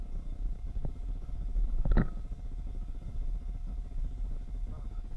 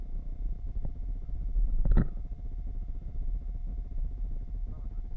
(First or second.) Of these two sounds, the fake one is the first